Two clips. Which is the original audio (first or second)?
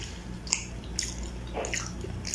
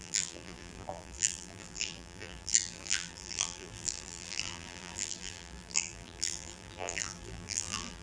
first